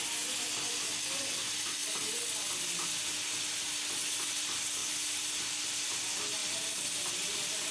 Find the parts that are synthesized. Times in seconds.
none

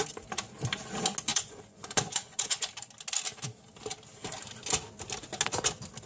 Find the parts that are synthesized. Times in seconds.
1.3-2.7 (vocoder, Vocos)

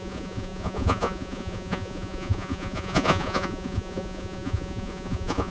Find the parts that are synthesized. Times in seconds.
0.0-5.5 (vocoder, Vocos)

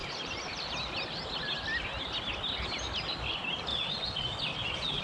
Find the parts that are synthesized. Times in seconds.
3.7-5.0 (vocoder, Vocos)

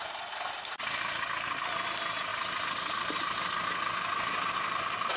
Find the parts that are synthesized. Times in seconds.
none

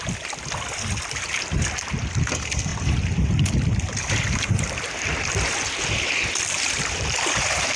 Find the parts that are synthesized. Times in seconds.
none

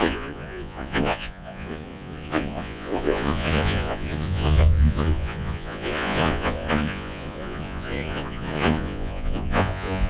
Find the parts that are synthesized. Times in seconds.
0.0-10.1 (vocoder, Vocos)